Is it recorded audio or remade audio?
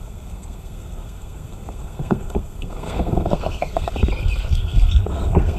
remade